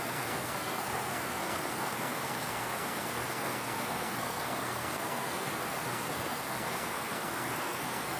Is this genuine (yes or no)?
no